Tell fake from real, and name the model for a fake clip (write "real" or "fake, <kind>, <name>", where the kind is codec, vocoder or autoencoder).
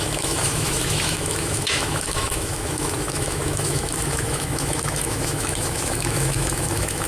fake, autoencoder, DAC-VAE